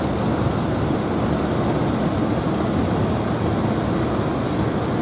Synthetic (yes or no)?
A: no